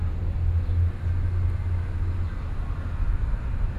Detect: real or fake real